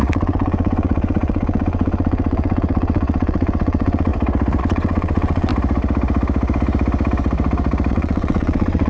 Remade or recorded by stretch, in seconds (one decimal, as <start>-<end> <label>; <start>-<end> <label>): 0.0-4.1 remade; 4.1-4.6 recorded; 4.6-5.5 remade; 5.5-7.9 recorded; 7.9-8.9 remade